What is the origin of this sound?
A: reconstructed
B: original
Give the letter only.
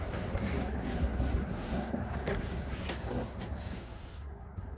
A